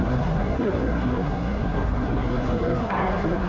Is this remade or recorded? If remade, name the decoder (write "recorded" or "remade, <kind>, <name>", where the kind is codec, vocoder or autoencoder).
remade, codec, SNAC